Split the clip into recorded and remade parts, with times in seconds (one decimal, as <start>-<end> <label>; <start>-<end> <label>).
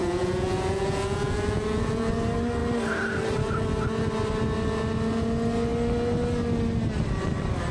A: 0.0-2.1 remade; 2.1-7.7 recorded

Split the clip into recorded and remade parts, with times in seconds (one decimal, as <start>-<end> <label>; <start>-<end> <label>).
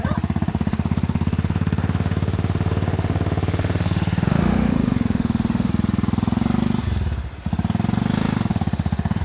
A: 0.0-0.5 recorded; 0.5-5.7 remade; 5.7-8.5 recorded; 8.5-9.2 remade